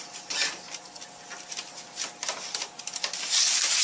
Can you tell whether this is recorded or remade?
recorded